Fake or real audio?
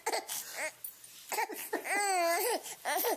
real